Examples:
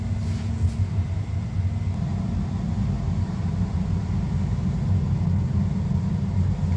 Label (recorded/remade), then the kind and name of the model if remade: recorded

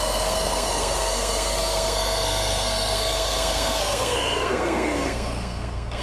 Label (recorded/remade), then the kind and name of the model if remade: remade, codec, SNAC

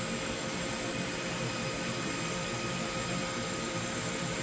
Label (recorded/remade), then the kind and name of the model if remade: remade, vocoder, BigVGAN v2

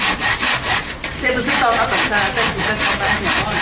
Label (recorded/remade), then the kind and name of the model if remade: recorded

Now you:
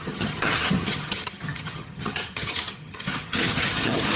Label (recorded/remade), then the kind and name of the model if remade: remade, vocoder, HiFi-GAN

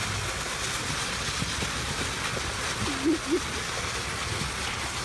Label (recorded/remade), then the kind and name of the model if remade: recorded